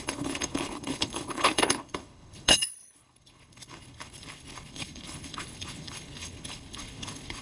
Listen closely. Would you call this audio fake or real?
fake